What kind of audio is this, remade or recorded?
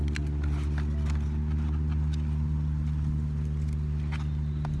recorded